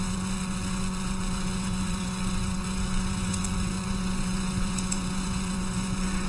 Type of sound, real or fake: fake